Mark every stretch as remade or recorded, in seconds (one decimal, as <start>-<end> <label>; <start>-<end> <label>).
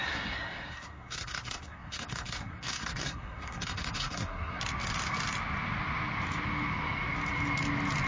0.0-4.6 remade; 4.6-8.1 recorded